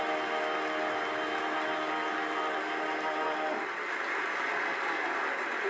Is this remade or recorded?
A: recorded